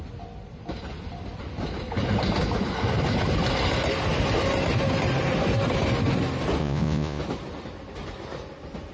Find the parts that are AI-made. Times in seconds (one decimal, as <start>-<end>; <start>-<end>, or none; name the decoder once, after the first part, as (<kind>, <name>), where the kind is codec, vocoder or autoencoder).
6.6-7.2 (vocoder, Vocos)